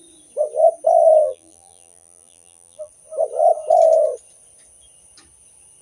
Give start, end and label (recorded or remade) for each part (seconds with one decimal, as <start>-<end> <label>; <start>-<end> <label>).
0.0-1.2 recorded; 1.2-2.9 remade; 2.9-5.8 recorded

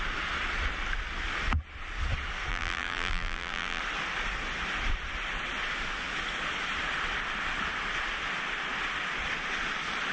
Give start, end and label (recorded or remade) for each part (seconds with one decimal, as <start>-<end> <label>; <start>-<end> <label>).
0.0-2.5 recorded; 2.5-3.8 remade; 3.8-10.1 recorded

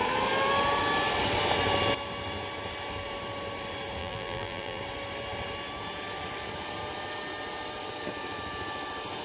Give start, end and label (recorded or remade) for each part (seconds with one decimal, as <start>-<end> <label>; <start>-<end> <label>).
0.0-4.0 recorded; 4.0-4.8 remade; 4.8-9.2 recorded

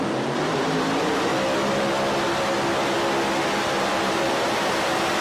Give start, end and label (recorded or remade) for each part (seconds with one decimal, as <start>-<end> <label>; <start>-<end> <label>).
0.0-1.3 remade; 1.3-3.8 recorded; 3.8-5.2 remade

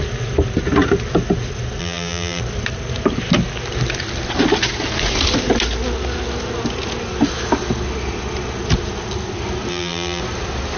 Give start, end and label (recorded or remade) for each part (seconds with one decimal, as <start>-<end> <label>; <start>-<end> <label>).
0.0-1.8 recorded; 1.8-2.4 remade; 2.4-9.7 recorded; 9.7-10.2 remade; 10.2-10.8 recorded

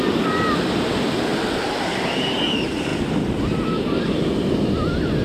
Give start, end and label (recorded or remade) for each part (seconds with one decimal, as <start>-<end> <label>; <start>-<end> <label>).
0.0-1.3 remade; 1.3-1.8 recorded; 1.8-5.2 remade